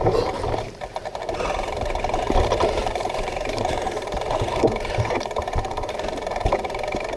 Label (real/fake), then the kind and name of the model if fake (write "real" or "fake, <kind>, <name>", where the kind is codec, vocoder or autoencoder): fake, vocoder, BigVGAN v2